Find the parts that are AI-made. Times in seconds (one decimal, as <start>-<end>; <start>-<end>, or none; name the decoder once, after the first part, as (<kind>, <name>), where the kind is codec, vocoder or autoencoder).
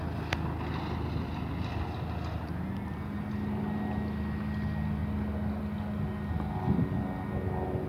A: none